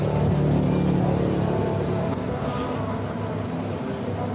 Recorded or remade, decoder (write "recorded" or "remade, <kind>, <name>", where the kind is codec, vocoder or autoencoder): recorded